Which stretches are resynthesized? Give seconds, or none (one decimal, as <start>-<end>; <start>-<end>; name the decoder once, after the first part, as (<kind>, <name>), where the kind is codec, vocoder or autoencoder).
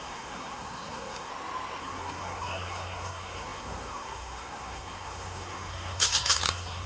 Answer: 0.0-1.3 (codec, SNAC); 1.8-6.9